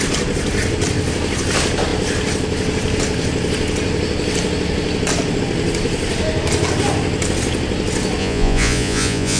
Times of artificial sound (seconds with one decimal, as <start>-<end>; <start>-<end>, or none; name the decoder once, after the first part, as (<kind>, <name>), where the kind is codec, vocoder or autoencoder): 8.2-9.4 (vocoder, Vocos)